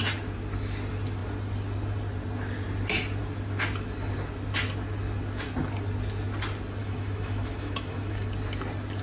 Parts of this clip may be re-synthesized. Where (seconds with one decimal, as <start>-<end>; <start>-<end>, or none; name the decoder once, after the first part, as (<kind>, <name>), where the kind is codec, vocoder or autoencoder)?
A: 6.8-8.3 (autoencoder, DAC-VAE)

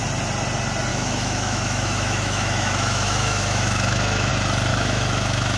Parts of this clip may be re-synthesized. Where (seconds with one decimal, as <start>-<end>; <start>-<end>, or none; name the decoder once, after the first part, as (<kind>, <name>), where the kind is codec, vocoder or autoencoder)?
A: 0.9-4.3 (autoencoder, DAC-VAE); 4.7-5.6

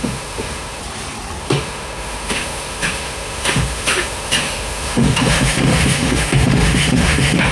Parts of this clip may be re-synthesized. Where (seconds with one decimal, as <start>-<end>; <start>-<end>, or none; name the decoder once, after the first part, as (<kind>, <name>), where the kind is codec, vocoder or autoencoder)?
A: 0.0-0.8 (autoencoder, DAC-VAE); 1.4-7.5

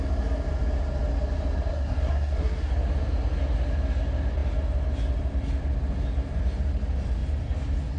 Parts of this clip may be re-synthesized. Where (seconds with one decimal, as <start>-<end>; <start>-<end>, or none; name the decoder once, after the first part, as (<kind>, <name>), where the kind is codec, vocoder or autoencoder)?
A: 1.7-2.7 (codec, SNAC)

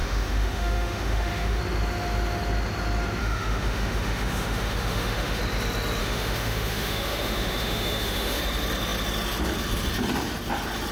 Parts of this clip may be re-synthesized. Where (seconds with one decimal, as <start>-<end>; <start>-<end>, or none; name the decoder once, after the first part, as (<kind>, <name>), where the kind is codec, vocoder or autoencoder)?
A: 0.0-1.6 (autoencoder, DAC-VAE); 3.2-5.4; 6.0-8.4

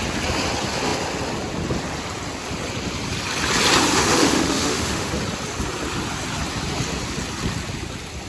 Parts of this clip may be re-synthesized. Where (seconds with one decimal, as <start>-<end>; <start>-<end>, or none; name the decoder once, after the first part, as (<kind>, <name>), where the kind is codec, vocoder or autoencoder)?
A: 3.9-5.1 (autoencoder, DAC-VAE)

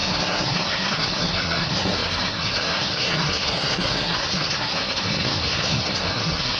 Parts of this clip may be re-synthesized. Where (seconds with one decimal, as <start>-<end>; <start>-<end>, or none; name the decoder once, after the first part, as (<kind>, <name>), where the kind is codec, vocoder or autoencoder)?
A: 0.0-6.6 (codec, SNAC)